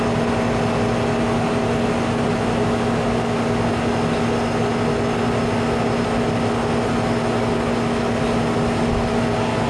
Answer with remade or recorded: recorded